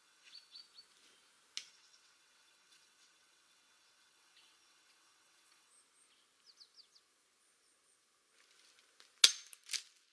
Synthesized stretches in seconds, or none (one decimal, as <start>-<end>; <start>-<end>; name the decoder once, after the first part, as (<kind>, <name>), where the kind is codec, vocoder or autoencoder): 0.0-0.6 (vocoder, WaveNeXt); 1.7-5.7